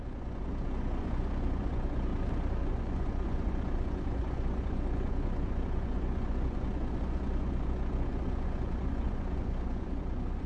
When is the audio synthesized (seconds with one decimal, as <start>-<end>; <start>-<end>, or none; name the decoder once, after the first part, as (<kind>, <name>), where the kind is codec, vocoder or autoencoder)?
0.0-2.1 (vocoder, Vocos); 2.6-10.5